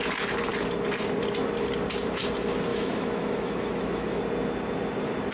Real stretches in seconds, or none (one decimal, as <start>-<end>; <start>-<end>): 0.0-2.7; 4.2-5.3